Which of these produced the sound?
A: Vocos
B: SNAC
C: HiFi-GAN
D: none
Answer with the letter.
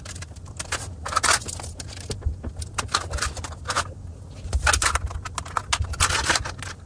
D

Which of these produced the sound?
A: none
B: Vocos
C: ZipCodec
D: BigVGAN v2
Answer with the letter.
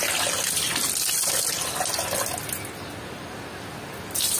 A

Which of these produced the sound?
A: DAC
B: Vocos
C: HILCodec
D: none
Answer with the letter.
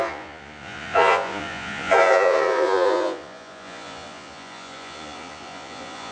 B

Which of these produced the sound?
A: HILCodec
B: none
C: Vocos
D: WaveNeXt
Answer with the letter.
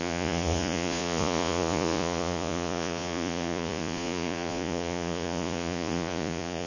C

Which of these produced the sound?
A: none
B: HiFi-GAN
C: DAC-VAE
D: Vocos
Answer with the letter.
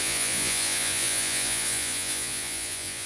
D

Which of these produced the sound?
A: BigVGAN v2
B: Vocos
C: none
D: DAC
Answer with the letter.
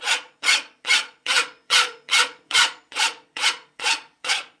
B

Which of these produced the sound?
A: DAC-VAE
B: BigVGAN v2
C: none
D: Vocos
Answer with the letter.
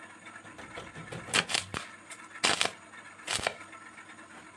C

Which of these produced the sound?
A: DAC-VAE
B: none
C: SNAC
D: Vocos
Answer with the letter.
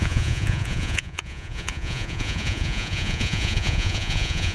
D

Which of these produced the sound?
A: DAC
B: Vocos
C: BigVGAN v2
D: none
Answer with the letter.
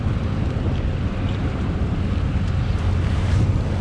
D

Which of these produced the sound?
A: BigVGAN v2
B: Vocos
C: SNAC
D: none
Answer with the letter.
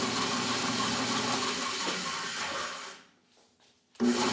D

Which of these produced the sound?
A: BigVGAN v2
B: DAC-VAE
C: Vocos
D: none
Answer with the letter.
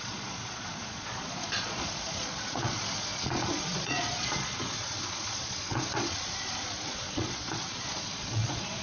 C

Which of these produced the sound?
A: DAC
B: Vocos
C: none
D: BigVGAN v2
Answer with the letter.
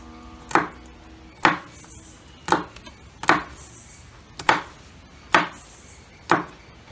C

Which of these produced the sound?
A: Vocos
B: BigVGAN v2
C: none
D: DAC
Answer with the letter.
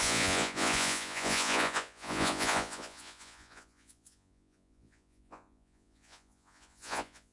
A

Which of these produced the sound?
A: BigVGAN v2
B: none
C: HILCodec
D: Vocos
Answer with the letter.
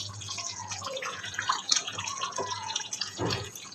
D